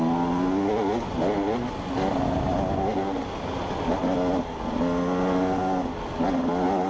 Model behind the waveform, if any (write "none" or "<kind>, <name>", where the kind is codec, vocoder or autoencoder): none